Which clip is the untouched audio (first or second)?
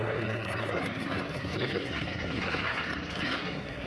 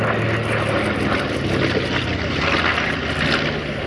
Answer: second